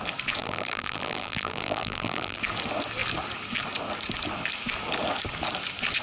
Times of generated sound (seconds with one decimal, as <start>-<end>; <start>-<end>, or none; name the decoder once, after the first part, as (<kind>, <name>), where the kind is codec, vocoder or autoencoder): 0.4-2.4 (vocoder, BigVGAN v2)